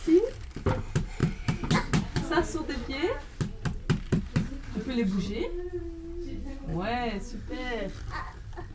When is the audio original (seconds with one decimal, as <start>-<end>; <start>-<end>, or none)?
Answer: 0.0-8.7